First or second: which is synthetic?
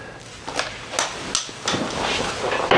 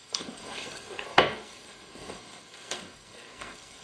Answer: second